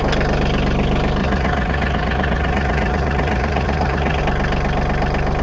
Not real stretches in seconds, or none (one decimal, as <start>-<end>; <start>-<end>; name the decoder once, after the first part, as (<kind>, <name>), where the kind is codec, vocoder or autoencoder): 1.2-4.2 (vocoder, Vocos)